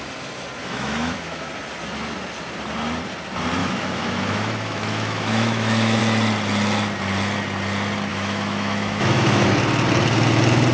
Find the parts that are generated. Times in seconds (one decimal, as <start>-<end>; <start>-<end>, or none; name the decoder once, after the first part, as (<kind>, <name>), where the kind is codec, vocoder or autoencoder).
0.6-1.5 (autoencoder, DAC-VAE); 3.6-6.0; 8.1-9.4